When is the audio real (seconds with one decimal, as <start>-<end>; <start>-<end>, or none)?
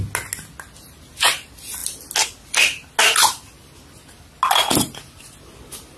0.0-6.0